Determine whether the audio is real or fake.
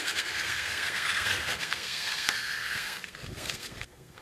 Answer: fake